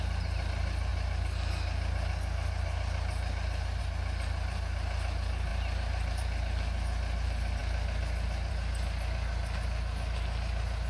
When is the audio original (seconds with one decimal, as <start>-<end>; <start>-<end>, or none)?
0.0-10.9